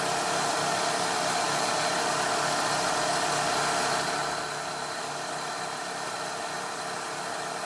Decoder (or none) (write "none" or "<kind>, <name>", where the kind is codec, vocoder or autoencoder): none